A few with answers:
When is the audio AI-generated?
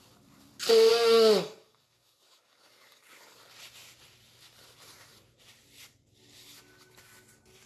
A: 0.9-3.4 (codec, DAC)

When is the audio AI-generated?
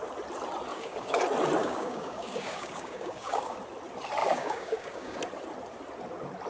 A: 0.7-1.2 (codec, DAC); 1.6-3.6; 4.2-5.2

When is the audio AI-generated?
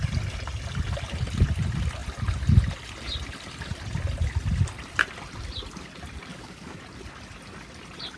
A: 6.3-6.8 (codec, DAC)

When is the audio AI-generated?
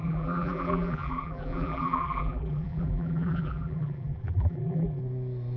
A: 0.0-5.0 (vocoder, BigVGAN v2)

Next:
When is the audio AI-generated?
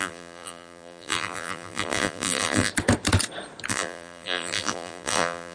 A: 0.0-2.7 (vocoder, BigVGAN v2); 3.7-5.5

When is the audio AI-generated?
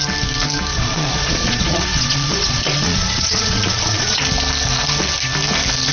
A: 0.7-4.2 (vocoder, Vocos)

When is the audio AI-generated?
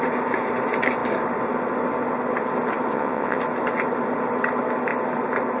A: 2.9-3.4 (vocoder, WaveNeXt)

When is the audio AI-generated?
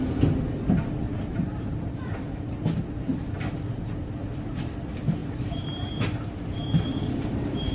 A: 1.3-2.7 (vocoder, BigVGAN v2); 5.2-7.7